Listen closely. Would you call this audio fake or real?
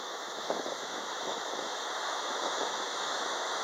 fake